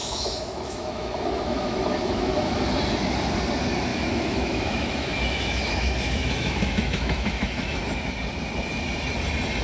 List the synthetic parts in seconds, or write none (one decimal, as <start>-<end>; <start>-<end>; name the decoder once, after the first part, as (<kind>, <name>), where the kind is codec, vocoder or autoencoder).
0.0-2.6 (autoencoder, DAC-VAE); 3.9-7.8

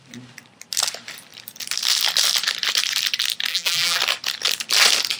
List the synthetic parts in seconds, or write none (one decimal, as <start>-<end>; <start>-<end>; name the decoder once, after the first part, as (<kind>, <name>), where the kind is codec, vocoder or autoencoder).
3.5-4.0 (vocoder, BigVGAN v2)

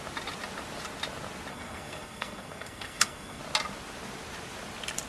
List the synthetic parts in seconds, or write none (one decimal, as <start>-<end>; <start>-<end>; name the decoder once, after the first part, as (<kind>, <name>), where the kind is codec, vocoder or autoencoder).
1.5-3.4 (codec, SNAC)

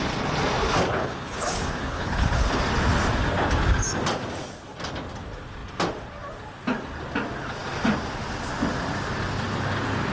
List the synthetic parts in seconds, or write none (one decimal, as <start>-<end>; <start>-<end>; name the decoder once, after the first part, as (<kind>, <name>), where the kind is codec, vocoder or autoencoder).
1.0-2.6 (codec, HILCodec)

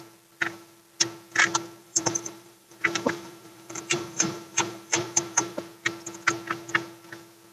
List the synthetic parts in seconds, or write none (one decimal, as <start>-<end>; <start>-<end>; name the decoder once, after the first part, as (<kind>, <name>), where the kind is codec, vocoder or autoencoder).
1.8-5.6 (vocoder, BigVGAN v2)

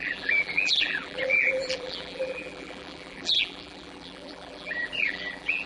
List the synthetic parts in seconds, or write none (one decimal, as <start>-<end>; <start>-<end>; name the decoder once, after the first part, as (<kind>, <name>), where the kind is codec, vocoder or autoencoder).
0.0-5.7 (vocoder, BigVGAN v2)

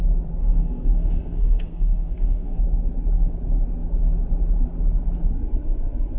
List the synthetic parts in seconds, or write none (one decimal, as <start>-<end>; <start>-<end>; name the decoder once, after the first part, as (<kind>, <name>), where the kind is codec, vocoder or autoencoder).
0.4-2.6 (codec, SNAC)